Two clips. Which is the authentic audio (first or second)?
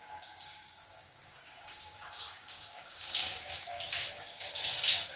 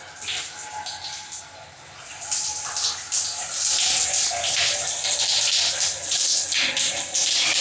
second